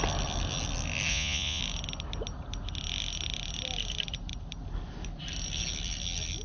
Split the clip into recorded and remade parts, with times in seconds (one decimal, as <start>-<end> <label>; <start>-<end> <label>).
0.0-1.1 recorded; 1.1-1.6 remade; 1.6-6.4 recorded